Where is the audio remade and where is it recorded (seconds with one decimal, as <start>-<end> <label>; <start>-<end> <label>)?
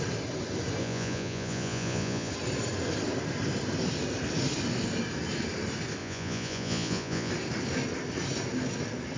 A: 0.0-0.8 recorded; 0.8-2.3 remade; 2.3-6.0 recorded; 6.0-7.3 remade; 7.3-9.2 recorded